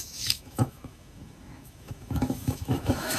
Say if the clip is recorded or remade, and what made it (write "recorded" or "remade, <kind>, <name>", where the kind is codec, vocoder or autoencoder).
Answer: remade, autoencoder, DAC-VAE